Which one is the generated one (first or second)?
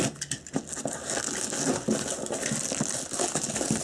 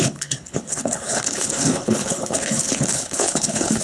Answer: second